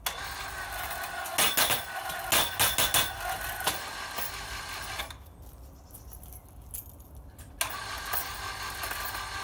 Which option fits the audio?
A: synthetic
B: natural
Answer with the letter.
B